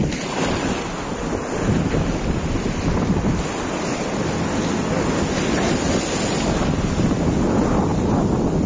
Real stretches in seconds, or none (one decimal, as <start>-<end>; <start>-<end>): 0.0-8.7